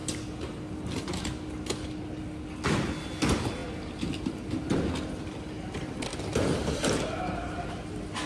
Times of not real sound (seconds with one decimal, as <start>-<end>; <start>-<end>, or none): none